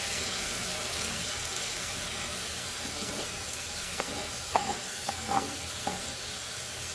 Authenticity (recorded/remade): remade